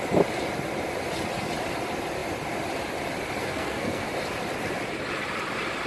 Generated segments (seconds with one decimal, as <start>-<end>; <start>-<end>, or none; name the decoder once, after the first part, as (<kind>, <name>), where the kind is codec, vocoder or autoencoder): 3.4-4.1 (codec, SNAC)